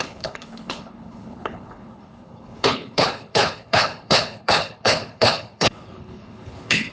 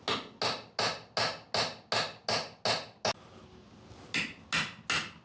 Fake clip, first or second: first